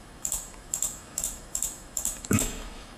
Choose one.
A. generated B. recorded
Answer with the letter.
A